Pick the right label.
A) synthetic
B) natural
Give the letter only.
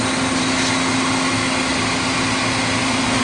B